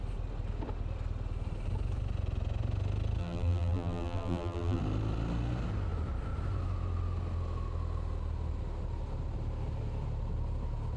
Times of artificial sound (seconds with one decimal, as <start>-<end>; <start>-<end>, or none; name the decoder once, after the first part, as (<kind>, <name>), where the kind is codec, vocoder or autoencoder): 3.2-4.8 (vocoder, BigVGAN v2)